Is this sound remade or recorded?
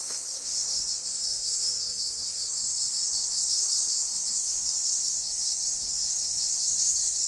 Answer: remade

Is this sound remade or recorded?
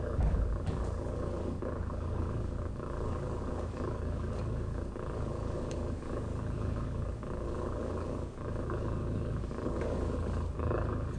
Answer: remade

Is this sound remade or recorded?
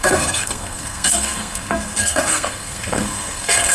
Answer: remade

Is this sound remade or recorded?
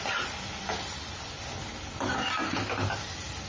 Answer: recorded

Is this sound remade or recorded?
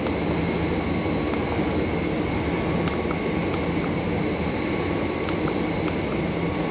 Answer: recorded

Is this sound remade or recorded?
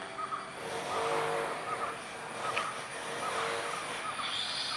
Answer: recorded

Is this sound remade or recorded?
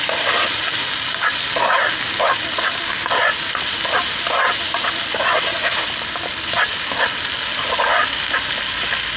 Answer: recorded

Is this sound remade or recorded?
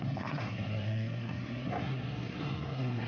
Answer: remade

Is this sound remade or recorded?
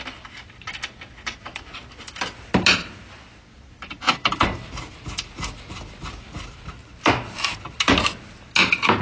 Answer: recorded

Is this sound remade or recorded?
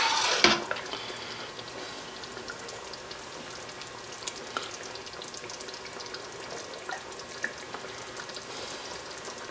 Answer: recorded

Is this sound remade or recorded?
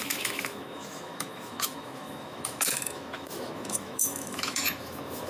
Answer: remade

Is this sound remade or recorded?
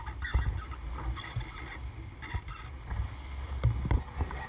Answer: recorded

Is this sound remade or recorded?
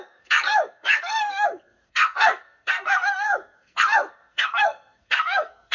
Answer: remade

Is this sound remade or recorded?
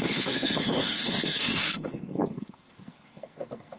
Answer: remade